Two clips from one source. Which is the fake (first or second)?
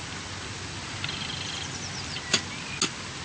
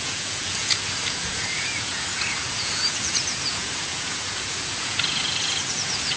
second